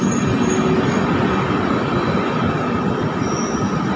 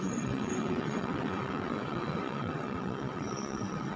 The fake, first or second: second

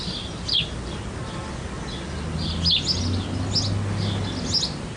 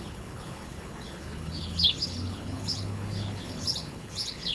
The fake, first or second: second